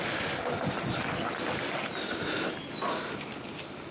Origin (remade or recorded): recorded